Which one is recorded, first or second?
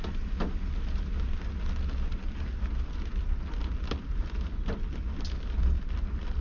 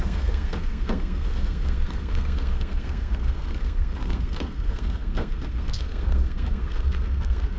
first